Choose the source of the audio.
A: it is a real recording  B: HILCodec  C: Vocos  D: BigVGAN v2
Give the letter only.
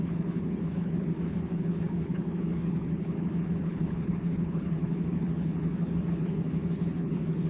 B